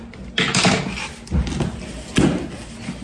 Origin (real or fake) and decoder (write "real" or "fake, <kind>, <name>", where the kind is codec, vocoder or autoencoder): real